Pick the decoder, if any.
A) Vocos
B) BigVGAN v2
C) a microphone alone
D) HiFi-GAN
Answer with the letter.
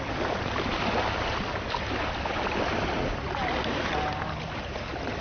C